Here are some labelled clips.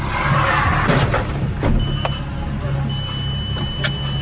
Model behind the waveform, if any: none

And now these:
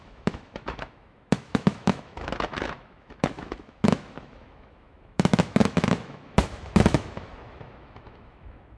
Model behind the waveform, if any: autoencoder, DAC-VAE